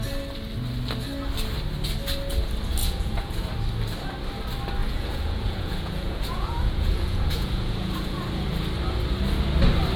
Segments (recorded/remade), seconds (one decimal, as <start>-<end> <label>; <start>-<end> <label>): 0.0-2.8 recorded; 2.8-3.5 remade; 3.5-4.8 recorded; 4.8-8.2 remade; 8.2-10.0 recorded